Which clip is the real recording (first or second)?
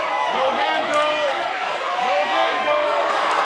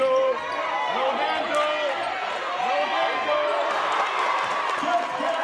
second